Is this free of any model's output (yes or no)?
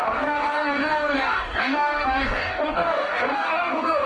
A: no